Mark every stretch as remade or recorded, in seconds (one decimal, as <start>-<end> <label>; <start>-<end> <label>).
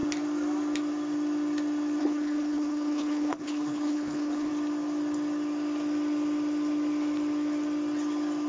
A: 0.0-2.0 recorded; 2.0-4.5 remade; 4.5-8.5 recorded